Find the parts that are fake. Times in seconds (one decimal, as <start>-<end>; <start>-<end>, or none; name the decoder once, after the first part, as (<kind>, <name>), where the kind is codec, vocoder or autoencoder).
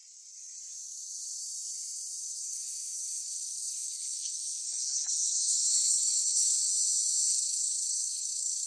2.2-6.7 (codec, HILCodec); 7.3-8.7